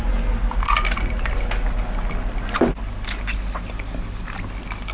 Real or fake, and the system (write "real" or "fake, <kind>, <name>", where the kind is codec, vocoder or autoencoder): real